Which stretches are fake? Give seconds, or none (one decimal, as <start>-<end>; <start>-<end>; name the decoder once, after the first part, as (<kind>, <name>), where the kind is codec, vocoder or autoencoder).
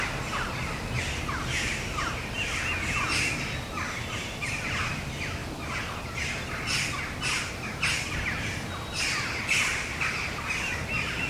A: none